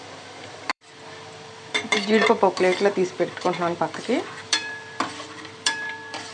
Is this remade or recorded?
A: remade